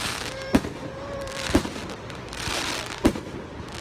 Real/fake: fake